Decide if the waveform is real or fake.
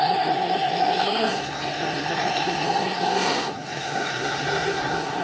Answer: fake